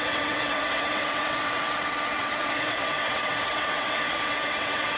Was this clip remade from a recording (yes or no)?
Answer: yes